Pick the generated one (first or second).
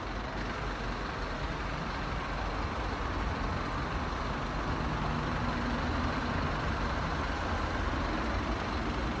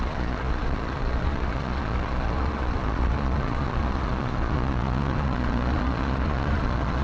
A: second